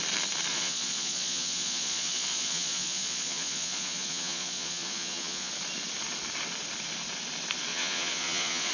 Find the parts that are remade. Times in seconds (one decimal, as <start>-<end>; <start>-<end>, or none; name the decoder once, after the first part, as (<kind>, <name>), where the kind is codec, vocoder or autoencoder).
0.5-5.5 (vocoder, Vocos); 7.7-8.7